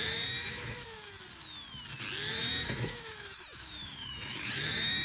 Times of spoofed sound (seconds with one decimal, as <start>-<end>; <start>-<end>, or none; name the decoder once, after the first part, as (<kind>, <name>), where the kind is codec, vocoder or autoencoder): 0.0-1.2 (autoencoder, DAC-VAE); 2.3-5.0